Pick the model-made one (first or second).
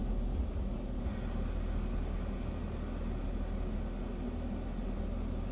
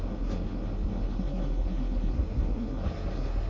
second